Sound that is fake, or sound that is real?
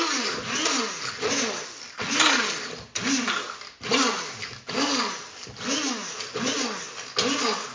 real